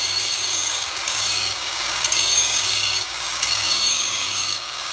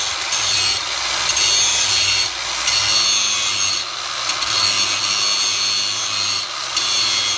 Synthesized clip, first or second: first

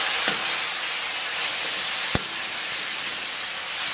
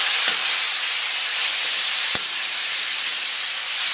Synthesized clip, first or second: second